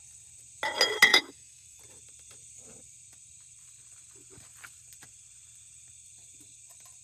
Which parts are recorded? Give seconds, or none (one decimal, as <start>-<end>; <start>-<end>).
0.0-1.1; 1.8-7.0